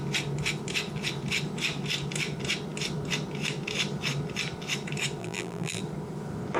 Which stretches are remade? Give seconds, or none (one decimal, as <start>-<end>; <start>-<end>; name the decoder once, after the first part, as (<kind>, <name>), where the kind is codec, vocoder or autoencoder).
5.2-5.8 (vocoder, BigVGAN v2)